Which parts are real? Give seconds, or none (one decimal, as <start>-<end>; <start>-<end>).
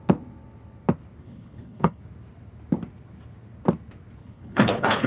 0.0-1.2; 2.0-4.2